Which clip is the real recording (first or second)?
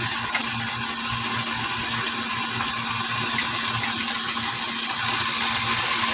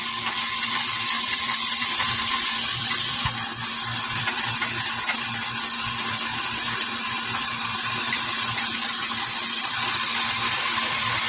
first